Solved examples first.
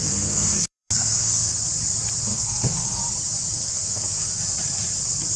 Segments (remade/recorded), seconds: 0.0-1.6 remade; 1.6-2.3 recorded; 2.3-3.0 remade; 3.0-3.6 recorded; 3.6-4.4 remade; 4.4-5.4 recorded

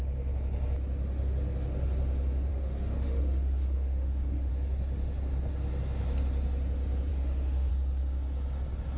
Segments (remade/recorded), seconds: 0.0-2.5 recorded; 2.5-4.5 remade; 4.5-7.1 recorded; 7.1-7.7 remade; 7.7-9.0 recorded

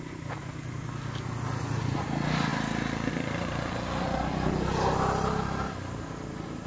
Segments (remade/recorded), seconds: 0.0-6.7 recorded

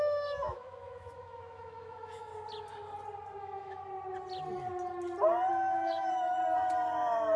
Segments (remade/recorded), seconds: 0.0-2.3 remade; 2.3-3.4 recorded; 3.4-3.8 remade; 3.8-5.5 recorded; 5.5-6.4 remade; 6.4-7.4 recorded